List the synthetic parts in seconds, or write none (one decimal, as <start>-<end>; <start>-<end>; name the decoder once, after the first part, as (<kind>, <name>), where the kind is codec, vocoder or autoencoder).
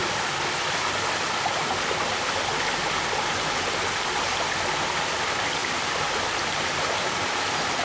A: 5.6-6.7 (vocoder, BigVGAN v2)